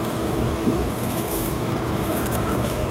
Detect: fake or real fake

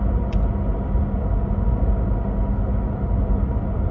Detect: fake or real real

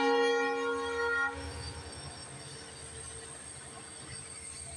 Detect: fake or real real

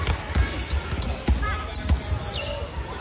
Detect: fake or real real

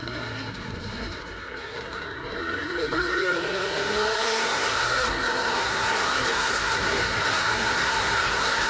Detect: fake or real fake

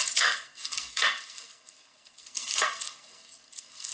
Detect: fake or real fake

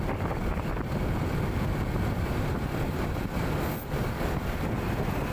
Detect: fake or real real